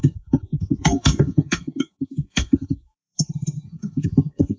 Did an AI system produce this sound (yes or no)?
yes